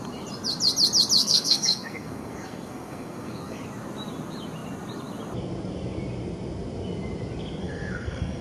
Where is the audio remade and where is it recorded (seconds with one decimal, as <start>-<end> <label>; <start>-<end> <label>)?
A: 0.0-1.2 recorded; 1.2-3.6 remade; 3.6-7.6 recorded; 7.6-8.4 remade